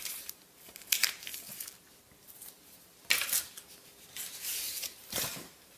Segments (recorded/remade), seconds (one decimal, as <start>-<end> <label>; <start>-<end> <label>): 0.0-1.3 remade; 1.3-2.2 recorded; 2.2-2.9 remade; 2.9-3.9 recorded; 3.9-5.8 remade